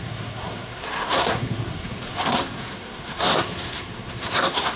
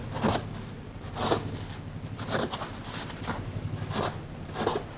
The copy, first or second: first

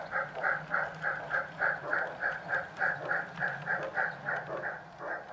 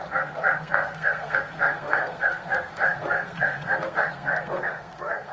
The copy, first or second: second